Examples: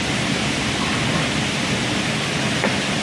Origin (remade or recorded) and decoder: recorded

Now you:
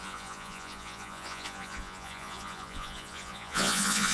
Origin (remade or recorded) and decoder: remade, vocoder, Vocos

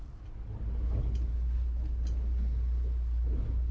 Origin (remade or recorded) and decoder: recorded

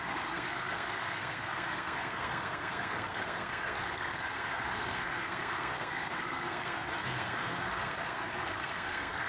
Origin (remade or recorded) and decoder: remade, codec, SNAC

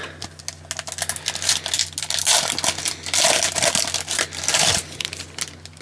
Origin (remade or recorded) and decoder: recorded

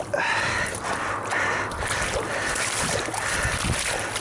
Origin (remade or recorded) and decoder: recorded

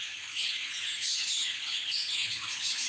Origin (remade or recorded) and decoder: remade, codec, HILCodec